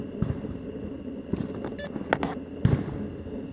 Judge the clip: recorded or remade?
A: recorded